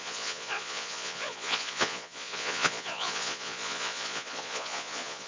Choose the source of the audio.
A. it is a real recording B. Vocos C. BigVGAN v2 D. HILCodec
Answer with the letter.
B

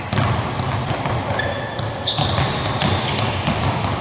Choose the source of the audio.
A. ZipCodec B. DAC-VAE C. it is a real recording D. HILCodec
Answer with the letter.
C